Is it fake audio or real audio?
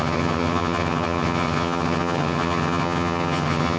fake